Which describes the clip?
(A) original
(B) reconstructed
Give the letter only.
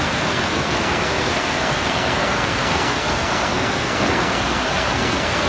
B